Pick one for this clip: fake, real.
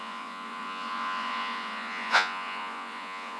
fake